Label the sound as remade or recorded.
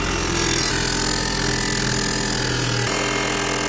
recorded